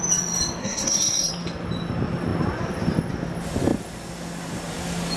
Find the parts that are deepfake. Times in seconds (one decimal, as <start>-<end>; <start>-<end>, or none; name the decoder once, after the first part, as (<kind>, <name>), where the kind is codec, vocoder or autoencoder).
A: 0.6-1.3 (codec, SNAC)